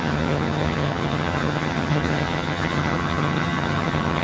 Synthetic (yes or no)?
yes